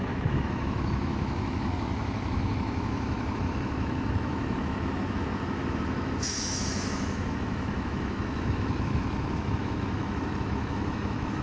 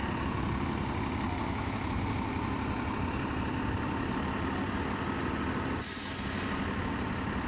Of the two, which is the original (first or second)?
second